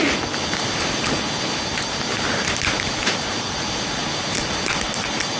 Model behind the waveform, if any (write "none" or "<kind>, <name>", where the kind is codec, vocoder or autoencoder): none